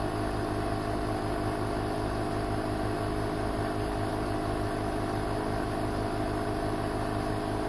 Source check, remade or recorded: recorded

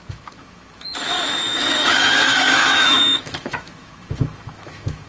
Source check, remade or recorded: remade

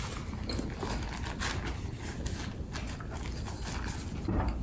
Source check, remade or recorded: recorded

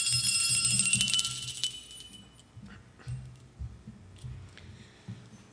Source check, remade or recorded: recorded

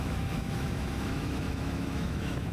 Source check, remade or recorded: remade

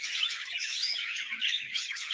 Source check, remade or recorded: remade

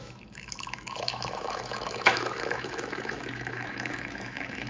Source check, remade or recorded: remade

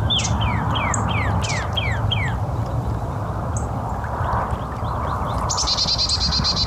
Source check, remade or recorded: recorded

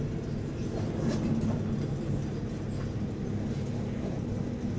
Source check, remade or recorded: recorded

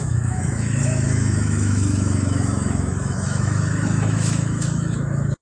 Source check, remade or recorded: remade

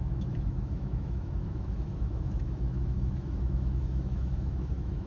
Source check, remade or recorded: remade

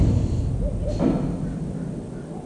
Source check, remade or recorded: recorded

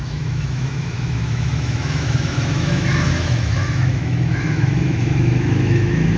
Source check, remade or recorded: remade